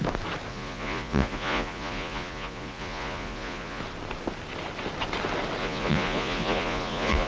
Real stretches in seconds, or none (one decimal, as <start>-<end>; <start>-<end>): 0.0-0.5; 3.8-5.6